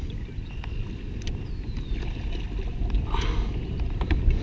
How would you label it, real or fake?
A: real